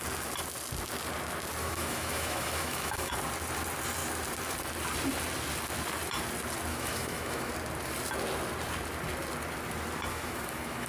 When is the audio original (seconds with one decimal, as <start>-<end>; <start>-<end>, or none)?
0.0-1.6; 3.1-6.7; 7.5-10.1